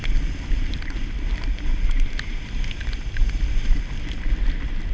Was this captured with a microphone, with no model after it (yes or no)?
yes